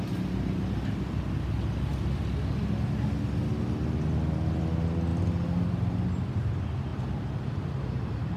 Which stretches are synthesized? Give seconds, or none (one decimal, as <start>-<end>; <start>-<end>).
6.9-8.4